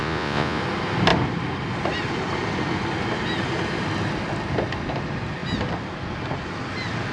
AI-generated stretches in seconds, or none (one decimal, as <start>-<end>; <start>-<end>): 0.0-0.6